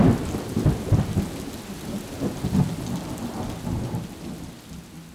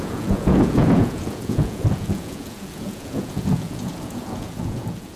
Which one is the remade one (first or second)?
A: second